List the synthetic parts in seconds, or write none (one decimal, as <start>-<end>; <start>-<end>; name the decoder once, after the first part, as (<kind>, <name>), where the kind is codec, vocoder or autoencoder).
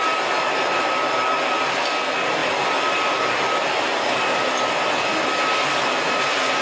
none